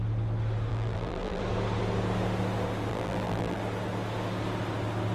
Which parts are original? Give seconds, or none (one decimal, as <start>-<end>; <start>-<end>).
0.0-0.7; 1.4-2.9; 3.6-5.1